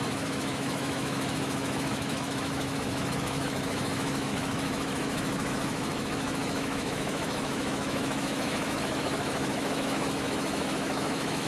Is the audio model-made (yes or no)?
yes